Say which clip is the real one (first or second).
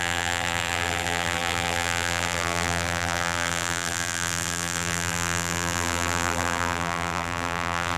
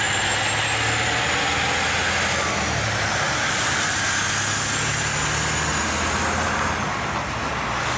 second